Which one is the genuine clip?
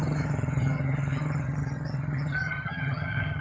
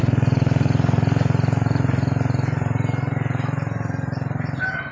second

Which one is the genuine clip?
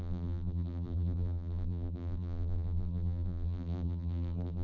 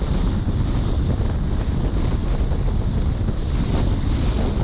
second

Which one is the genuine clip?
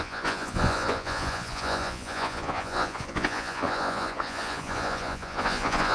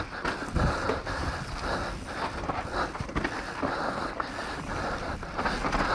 second